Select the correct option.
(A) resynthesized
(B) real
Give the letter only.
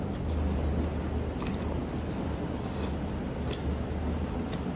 B